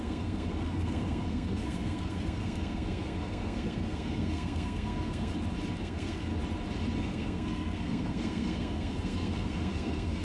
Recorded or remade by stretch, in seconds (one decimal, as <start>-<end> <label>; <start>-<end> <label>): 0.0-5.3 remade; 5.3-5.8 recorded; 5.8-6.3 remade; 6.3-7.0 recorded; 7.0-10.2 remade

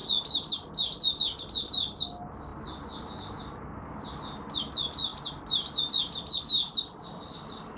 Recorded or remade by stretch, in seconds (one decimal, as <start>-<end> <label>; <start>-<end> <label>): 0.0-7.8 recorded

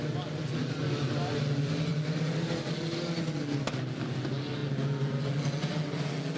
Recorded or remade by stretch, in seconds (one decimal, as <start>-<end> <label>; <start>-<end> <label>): 0.0-6.4 recorded